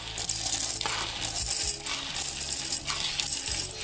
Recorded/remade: recorded